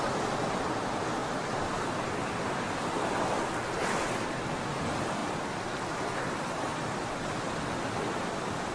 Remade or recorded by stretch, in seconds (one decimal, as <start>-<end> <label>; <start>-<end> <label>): 0.0-8.7 recorded

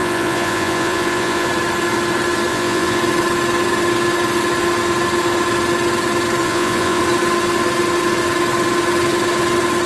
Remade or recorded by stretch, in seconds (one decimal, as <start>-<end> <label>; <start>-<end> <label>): 0.0-1.5 remade; 1.5-2.5 recorded; 2.5-3.0 remade; 3.0-6.4 recorded; 6.4-7.0 remade; 7.0-9.9 recorded